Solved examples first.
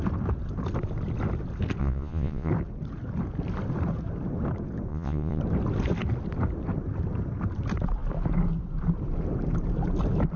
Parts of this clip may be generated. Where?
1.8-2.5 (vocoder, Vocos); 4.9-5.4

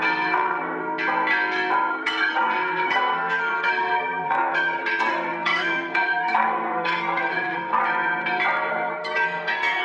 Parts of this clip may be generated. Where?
0.0-0.8 (codec, SNAC); 1.9-7.8; 8.7-9.8

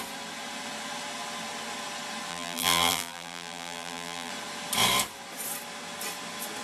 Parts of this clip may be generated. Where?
2.3-4.3 (vocoder, BigVGAN v2)

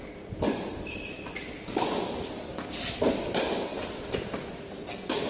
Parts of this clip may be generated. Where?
none

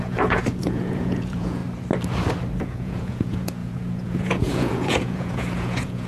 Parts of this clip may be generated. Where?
0.0-1.6 (vocoder, Vocos); 2.6-6.1

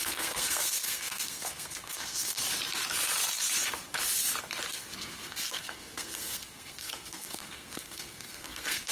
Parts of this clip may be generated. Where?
0.0-2.4 (codec, SNAC); 4.7-8.9

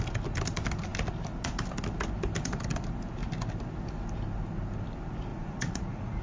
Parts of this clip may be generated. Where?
5.3-6.2 (vocoder, Vocos)

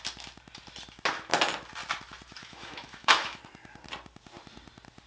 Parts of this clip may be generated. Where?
2.4-3.4 (autoencoder, DAC-VAE)